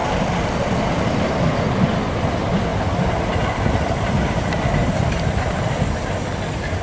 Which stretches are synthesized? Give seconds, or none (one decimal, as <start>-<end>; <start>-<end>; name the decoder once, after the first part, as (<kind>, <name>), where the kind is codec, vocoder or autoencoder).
0.0-1.6 (vocoder, BigVGAN v2); 2.7-5.8